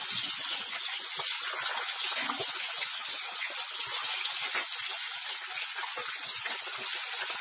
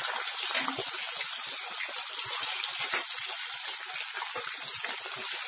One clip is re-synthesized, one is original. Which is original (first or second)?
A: second